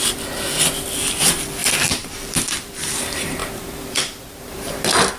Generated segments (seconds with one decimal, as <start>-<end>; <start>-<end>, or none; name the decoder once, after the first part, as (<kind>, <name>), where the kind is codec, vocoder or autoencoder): 1.6-2.7 (vocoder, BigVGAN v2); 3.4-4.8